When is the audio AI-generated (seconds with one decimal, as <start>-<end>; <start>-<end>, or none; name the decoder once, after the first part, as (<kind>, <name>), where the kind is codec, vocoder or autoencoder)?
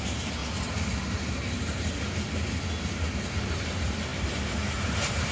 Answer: 0.0-0.4 (vocoder, BigVGAN v2); 3.6-5.3